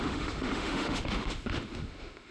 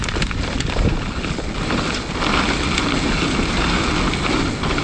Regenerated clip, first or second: first